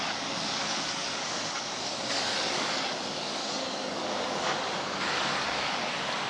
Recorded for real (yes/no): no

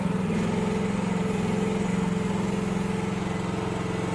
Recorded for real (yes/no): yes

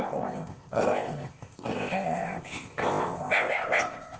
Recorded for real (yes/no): no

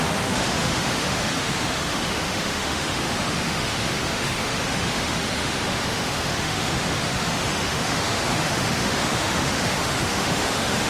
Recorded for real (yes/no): no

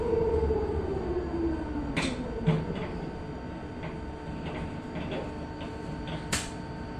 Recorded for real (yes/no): no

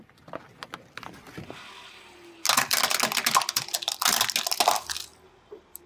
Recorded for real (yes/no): yes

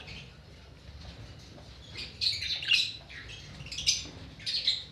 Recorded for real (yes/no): yes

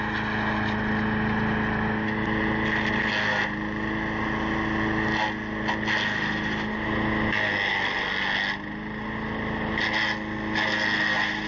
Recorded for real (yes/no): yes